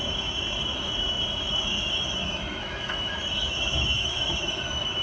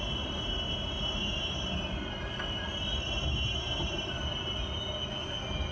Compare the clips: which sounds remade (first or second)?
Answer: first